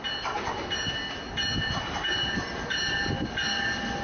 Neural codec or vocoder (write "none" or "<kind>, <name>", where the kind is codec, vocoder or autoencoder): none